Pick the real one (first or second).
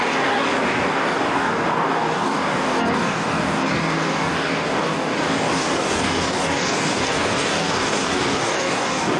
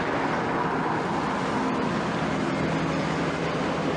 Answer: second